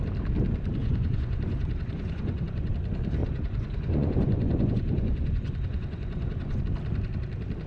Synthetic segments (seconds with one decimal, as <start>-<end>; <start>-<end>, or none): 0.8-2.7; 3.2-6.6